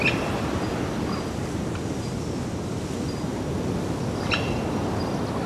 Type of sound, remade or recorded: recorded